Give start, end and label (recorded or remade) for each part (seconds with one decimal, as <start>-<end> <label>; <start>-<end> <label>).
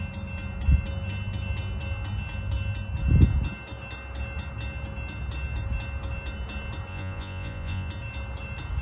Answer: 0.0-6.9 recorded; 6.9-7.9 remade; 7.9-8.8 recorded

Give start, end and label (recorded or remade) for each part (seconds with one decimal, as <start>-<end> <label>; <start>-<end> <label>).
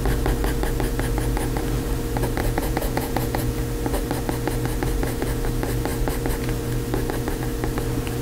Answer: 0.0-2.4 recorded; 2.4-3.5 remade; 3.5-8.2 recorded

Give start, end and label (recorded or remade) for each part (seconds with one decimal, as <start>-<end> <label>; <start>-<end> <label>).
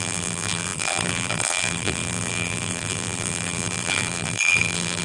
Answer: 0.0-5.0 remade